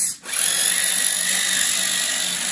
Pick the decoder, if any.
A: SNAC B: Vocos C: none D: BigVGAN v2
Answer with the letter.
C